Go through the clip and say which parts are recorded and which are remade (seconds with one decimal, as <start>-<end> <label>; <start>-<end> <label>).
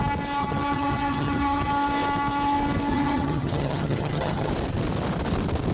0.0-0.4 recorded; 0.4-1.7 remade; 1.7-2.9 recorded; 2.9-4.5 remade; 4.5-5.7 recorded